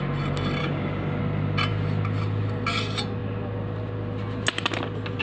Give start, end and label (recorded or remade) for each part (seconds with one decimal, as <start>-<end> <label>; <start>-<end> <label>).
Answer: 0.0-0.6 recorded; 0.6-1.2 remade; 1.2-5.2 recorded